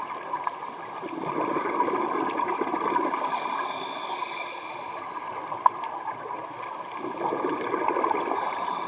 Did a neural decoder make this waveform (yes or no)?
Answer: no